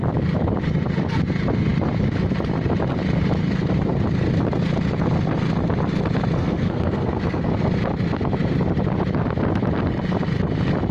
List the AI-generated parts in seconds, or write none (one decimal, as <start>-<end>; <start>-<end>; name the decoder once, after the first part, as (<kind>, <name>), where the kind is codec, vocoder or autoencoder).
6.4-7.5 (codec, SNAC)